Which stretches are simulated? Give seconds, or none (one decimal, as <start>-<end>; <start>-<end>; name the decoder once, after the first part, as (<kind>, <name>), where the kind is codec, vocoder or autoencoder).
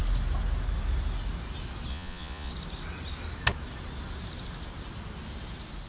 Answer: 1.9-2.5 (vocoder, Vocos)